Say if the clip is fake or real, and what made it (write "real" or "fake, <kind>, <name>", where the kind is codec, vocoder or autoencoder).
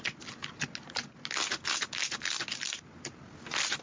real